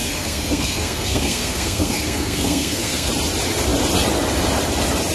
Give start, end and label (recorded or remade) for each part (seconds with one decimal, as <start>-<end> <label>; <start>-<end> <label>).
0.0-3.1 remade; 3.1-5.1 recorded